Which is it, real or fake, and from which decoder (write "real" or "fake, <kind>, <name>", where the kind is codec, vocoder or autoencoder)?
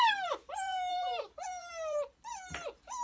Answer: fake, vocoder, BigVGAN v2